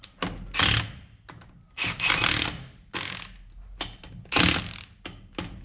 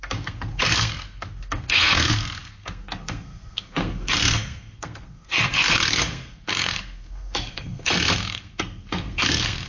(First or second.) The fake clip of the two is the second